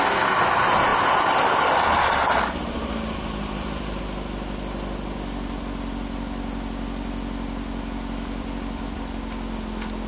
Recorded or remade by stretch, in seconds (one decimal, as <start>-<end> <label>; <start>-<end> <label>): 0.0-0.9 recorded; 0.9-4.0 remade; 4.0-10.1 recorded

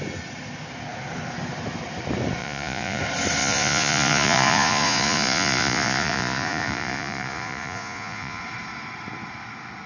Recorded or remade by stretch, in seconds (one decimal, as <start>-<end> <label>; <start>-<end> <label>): 0.0-2.4 recorded; 2.4-3.0 remade; 3.0-3.4 recorded; 3.4-8.4 remade; 8.4-9.9 recorded

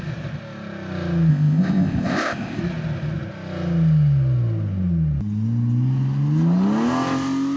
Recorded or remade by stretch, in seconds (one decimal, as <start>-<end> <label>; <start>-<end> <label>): 0.0-1.3 recorded; 1.3-2.6 remade; 2.6-7.6 recorded

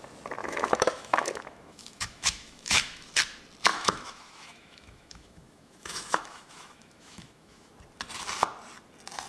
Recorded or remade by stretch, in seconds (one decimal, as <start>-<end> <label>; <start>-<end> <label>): 0.0-0.4 recorded; 0.4-3.1 remade; 3.1-3.7 recorded; 3.7-7.7 remade; 7.7-9.3 recorded

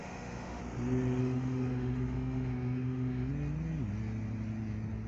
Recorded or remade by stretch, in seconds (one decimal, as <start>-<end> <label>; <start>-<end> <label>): 0.0-0.6 remade; 0.6-1.2 recorded; 1.2-3.3 remade; 3.3-5.1 recorded

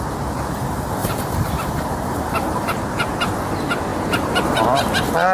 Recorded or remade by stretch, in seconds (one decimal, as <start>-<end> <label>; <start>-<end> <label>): 0.0-1.0 recorded; 1.0-3.3 remade; 3.3-3.9 recorded; 3.9-4.4 remade; 4.4-5.3 recorded

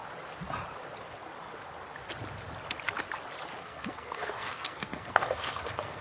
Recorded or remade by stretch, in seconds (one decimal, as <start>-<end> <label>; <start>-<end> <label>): 0.0-3.6 recorded; 3.6-6.0 remade

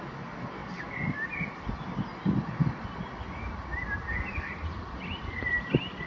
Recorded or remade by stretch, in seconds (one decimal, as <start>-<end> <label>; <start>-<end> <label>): 0.0-0.6 recorded; 0.6-1.8 remade; 1.8-2.2 recorded; 2.2-5.4 remade; 5.4-6.1 recorded